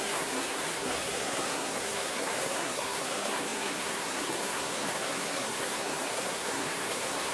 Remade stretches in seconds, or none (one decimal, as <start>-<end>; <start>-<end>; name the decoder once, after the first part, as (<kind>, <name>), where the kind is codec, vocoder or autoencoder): 0.0-7.3 (codec, SNAC)